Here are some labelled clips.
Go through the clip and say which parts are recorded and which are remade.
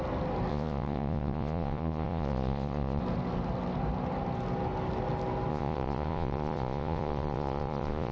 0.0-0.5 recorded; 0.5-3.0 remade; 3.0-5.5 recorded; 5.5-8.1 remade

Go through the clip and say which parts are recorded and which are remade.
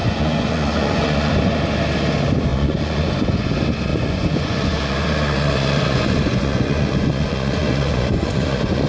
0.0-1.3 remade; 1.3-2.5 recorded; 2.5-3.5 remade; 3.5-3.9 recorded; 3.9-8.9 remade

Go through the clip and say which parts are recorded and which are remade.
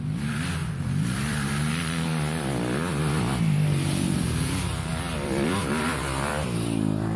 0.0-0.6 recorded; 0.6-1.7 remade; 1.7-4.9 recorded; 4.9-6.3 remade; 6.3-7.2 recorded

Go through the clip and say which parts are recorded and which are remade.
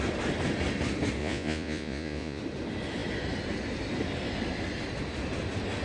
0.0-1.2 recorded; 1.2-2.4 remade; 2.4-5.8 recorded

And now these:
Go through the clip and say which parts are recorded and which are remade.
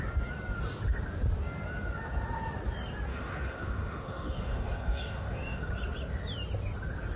0.0-3.1 recorded; 3.1-5.7 remade; 5.7-7.2 recorded